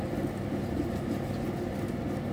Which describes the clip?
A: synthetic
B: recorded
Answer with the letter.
B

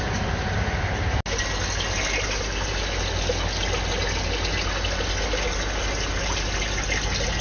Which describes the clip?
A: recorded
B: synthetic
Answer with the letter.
A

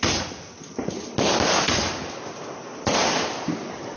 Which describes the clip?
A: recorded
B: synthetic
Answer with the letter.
A